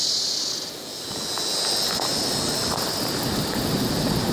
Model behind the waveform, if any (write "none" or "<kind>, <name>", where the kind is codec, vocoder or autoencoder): none